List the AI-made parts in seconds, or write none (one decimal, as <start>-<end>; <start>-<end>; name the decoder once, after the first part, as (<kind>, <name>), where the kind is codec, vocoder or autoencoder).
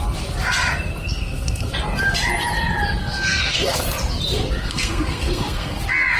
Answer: 1.0-1.7 (codec, SNAC); 3.0-3.8; 4.6-5.8